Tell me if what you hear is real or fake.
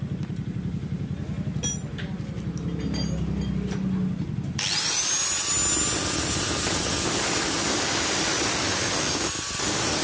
real